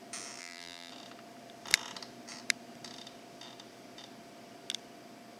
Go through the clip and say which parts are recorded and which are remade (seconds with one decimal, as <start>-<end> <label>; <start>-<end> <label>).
0.0-0.4 recorded; 0.4-0.9 remade; 0.9-5.4 recorded